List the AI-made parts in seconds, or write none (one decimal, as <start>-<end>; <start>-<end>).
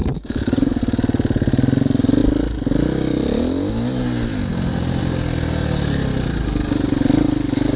0.0-0.8